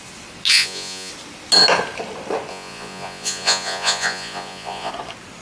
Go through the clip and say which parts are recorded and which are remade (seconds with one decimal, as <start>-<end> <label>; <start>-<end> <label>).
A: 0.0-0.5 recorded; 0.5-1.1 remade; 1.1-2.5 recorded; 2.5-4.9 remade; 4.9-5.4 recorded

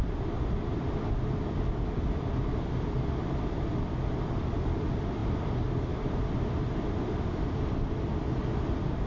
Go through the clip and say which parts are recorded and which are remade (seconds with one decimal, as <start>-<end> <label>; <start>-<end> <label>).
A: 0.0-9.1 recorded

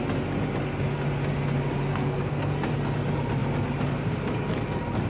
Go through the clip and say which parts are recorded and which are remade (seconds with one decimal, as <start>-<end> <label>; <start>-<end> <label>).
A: 0.0-1.9 recorded; 1.9-2.5 remade; 2.5-5.1 recorded